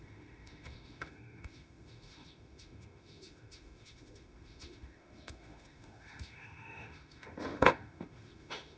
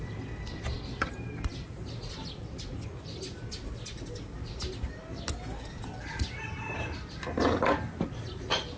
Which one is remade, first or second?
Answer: first